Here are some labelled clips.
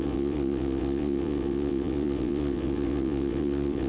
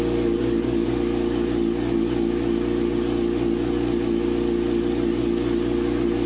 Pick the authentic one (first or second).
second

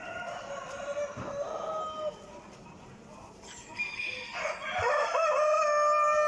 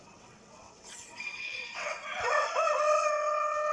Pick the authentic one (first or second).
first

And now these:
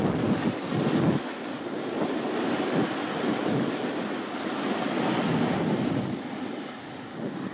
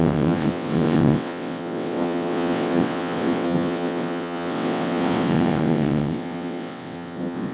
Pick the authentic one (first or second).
first